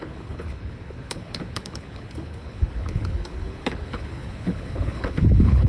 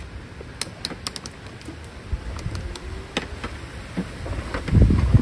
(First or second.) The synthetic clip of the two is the first